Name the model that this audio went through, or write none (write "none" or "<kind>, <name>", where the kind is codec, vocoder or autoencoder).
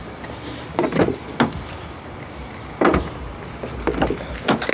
none